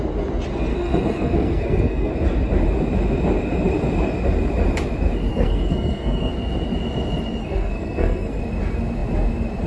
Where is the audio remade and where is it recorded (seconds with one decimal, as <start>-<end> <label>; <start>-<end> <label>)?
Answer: 0.0-0.7 recorded; 0.7-2.1 remade; 2.1-5.3 recorded; 5.3-6.3 remade; 6.3-7.4 recorded; 7.4-8.4 remade; 8.4-9.7 recorded